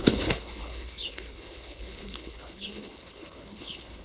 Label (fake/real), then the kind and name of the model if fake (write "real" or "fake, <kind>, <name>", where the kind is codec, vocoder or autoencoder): fake, codec, HILCodec